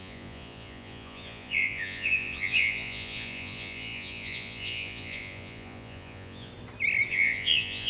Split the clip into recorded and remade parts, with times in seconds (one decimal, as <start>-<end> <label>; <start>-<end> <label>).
0.0-6.5 remade; 6.5-7.1 recorded; 7.1-7.9 remade